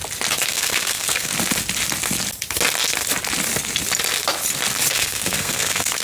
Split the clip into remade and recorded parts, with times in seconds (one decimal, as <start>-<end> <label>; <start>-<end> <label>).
0.0-0.5 recorded; 0.5-1.3 remade; 1.3-4.9 recorded; 4.9-6.0 remade